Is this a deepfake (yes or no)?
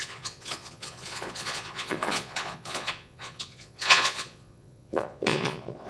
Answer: yes